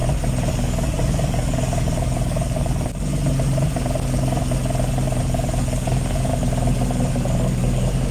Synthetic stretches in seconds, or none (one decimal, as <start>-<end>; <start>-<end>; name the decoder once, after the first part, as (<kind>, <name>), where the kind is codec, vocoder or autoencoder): 0.5-3.1 (codec, DAC); 5.2-6.3; 7.1-8.1